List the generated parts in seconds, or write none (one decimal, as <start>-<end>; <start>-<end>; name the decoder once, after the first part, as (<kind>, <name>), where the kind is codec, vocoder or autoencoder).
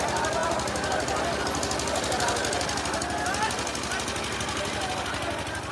none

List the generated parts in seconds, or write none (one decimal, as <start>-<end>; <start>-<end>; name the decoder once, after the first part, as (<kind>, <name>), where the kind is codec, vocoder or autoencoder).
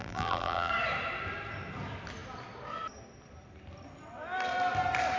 0.0-0.7 (vocoder, BigVGAN v2)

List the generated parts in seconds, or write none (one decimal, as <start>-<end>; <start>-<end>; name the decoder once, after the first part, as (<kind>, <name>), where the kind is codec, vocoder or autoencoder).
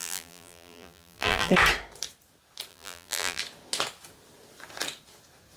0.0-1.5 (vocoder, BigVGAN v2); 2.7-3.4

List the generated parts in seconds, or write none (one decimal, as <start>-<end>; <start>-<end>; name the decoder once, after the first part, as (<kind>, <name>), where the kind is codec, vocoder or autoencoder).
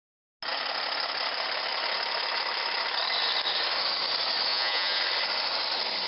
4.5-5.0 (vocoder, Vocos)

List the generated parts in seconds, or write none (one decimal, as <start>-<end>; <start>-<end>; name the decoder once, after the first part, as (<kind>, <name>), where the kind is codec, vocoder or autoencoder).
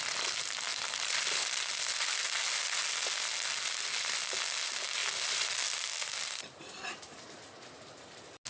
0.7-1.7 (vocoder, BigVGAN v2); 5.0-7.2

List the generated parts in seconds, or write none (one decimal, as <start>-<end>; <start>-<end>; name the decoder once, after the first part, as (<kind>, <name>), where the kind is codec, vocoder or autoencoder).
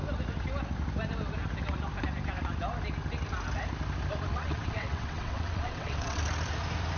4.3-6.2 (vocoder, WaveNeXt)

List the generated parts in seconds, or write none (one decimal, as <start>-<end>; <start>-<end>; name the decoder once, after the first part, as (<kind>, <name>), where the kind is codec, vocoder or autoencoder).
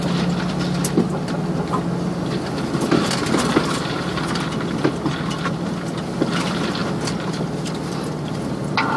none